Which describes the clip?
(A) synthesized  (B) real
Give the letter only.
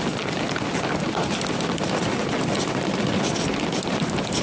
B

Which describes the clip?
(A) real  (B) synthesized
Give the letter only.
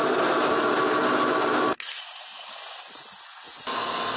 A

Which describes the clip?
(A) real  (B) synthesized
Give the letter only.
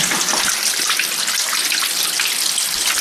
A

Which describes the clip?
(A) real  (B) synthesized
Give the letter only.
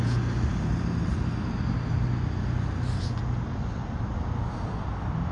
A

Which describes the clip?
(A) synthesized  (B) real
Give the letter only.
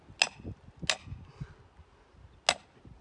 B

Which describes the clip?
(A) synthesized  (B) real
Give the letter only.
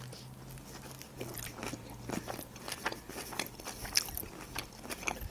B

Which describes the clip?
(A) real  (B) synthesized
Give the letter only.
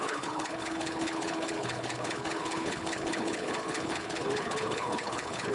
B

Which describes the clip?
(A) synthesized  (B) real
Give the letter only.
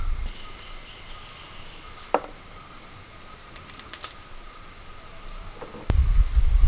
B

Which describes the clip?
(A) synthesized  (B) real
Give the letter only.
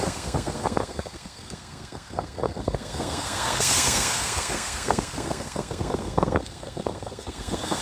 A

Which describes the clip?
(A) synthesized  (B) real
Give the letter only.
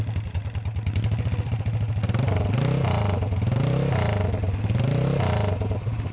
B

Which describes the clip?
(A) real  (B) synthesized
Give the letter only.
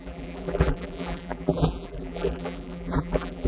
B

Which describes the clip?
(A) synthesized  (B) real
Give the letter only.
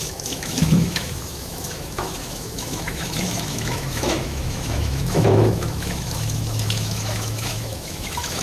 A